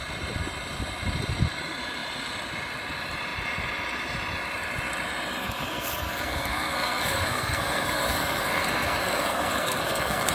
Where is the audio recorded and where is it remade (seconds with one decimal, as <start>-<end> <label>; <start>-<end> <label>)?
0.0-5.4 recorded; 5.4-10.3 remade